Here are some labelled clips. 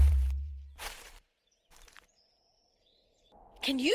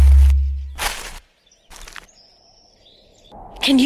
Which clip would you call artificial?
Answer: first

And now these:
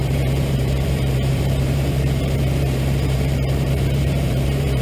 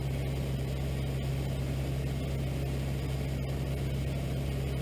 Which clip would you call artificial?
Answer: first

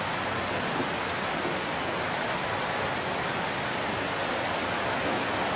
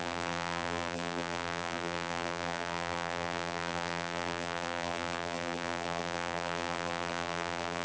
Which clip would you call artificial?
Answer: second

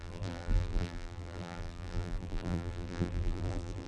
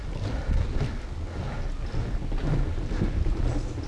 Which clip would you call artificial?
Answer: first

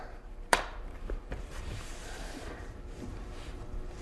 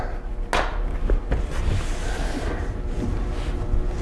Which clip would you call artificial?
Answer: first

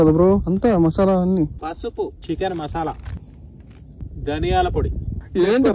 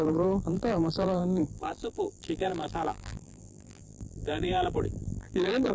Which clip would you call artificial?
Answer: second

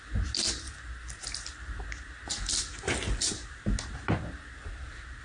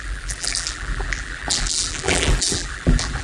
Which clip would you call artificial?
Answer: second